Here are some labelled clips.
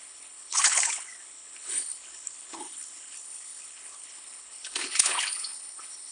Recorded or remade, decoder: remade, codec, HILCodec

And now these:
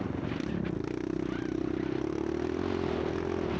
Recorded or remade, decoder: recorded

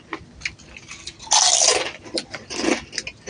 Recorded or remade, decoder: recorded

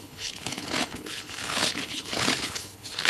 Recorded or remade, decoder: remade, codec, HILCodec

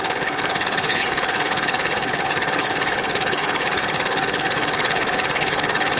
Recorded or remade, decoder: remade, codec, HILCodec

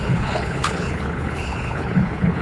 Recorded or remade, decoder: remade, codec, HILCodec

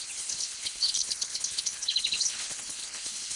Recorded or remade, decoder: remade, codec, HILCodec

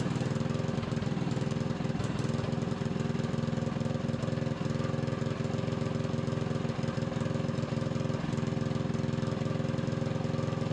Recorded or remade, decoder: recorded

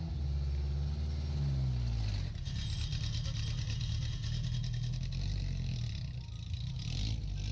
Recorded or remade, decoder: recorded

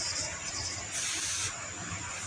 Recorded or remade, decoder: recorded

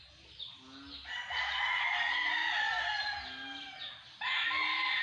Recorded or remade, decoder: recorded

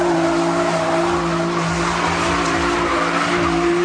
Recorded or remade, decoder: recorded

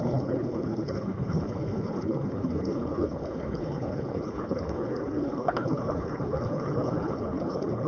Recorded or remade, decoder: remade, codec, HILCodec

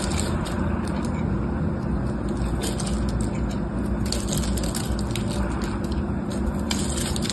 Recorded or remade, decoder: recorded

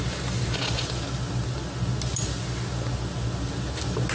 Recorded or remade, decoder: recorded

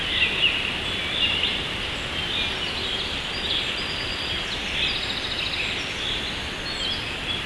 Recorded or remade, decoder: recorded